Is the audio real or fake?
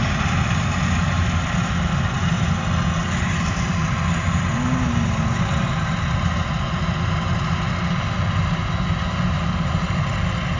real